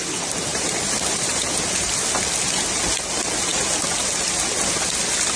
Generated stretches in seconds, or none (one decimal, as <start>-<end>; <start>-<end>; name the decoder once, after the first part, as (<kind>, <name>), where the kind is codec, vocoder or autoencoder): 0.5-1.9 (vocoder, BigVGAN v2)